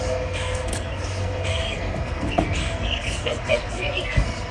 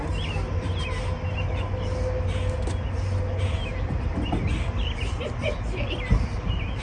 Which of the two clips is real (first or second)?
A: second